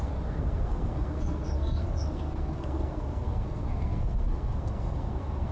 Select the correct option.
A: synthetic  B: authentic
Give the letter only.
A